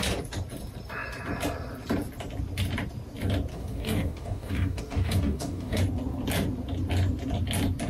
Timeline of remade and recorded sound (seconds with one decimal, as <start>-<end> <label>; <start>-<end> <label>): 0.0-3.5 recorded; 3.5-5.8 remade; 5.8-7.9 recorded

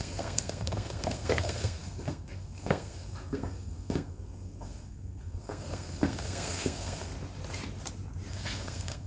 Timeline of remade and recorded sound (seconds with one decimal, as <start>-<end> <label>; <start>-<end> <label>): 0.0-7.1 remade; 7.1-8.3 recorded; 8.3-9.1 remade

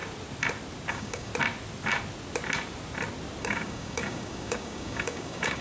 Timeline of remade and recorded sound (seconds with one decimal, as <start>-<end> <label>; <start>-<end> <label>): 0.0-0.9 recorded; 0.9-1.3 remade; 1.3-3.4 recorded; 3.4-5.6 remade

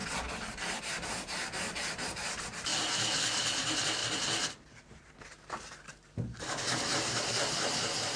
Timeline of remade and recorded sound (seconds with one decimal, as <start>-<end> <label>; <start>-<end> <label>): 0.0-0.8 recorded; 0.8-2.7 remade; 2.7-3.6 recorded; 3.6-4.0 remade; 4.0-5.2 recorded; 5.2-8.2 remade

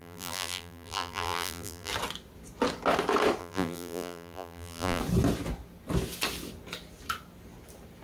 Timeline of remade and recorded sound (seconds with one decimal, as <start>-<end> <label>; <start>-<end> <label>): 0.0-1.9 remade; 1.9-3.4 recorded; 3.4-5.0 remade; 5.0-8.0 recorded

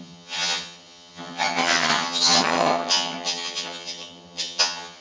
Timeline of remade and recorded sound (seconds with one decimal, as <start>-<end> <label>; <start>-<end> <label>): 0.0-5.0 remade